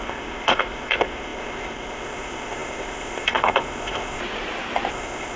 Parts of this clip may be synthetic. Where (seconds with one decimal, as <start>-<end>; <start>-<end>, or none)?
0.0-4.2; 4.9-5.4